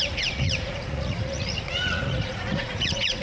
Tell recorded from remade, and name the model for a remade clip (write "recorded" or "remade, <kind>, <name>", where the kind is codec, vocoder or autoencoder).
remade, vocoder, Vocos